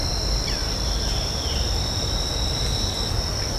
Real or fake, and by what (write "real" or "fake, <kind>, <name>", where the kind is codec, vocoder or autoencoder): real